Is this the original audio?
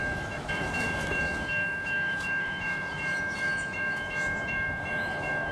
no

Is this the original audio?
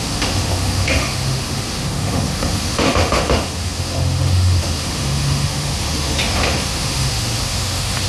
no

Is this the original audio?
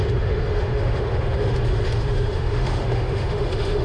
no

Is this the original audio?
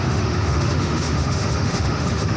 no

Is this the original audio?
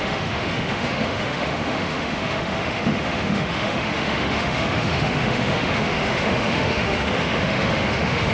no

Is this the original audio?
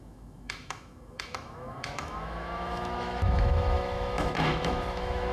no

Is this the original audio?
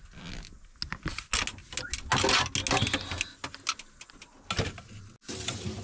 yes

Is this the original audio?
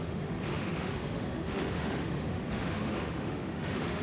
no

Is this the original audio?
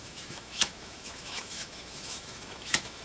no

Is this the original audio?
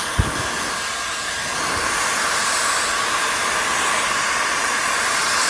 yes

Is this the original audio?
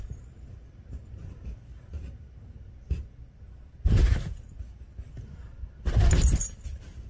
yes